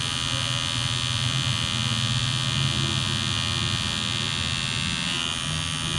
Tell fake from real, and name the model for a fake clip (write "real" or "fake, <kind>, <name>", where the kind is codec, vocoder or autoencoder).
real